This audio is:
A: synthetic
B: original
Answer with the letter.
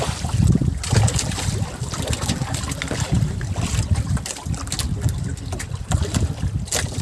B